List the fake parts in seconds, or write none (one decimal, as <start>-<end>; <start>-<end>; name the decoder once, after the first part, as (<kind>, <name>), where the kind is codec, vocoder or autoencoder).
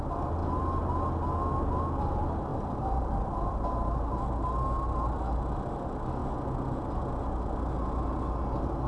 2.5-4.2 (vocoder, BigVGAN v2)